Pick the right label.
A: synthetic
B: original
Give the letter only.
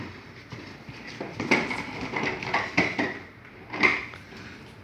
B